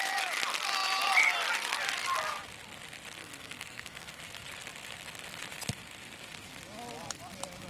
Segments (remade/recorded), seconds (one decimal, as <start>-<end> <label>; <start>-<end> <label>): 0.0-3.2 recorded; 3.2-4.2 remade; 4.2-7.7 recorded